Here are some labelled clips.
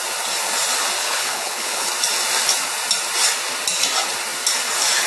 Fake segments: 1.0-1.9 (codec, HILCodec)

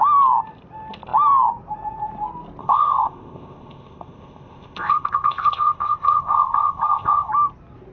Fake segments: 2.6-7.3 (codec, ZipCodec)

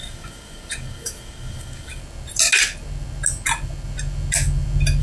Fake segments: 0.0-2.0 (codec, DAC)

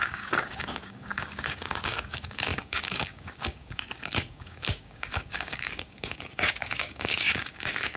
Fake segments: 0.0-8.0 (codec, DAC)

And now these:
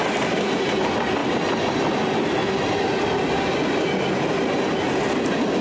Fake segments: none